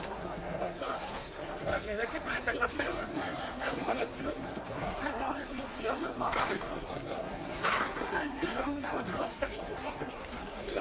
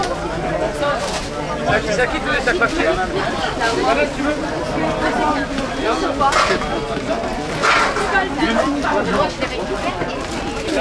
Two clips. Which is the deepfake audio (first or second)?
first